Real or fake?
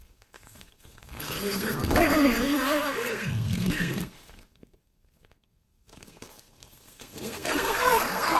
fake